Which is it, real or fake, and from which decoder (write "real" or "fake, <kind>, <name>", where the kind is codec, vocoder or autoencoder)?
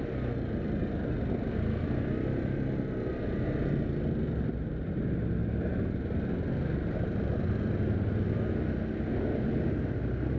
real